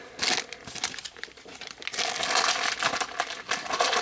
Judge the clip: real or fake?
real